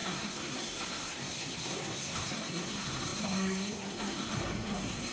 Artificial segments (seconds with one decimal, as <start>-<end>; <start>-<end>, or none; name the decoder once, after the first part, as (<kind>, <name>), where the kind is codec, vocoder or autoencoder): 0.0-5.1 (codec, SNAC)